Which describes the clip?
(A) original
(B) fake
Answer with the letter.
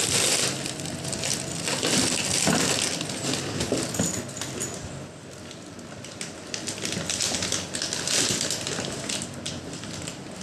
A